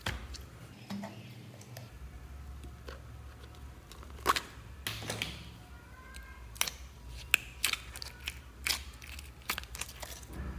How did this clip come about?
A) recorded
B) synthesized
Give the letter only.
A